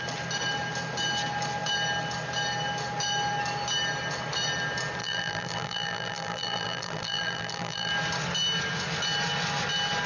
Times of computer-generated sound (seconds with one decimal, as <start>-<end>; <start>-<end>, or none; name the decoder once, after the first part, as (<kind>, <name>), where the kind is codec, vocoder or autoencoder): 5.0-7.9 (vocoder, BigVGAN v2)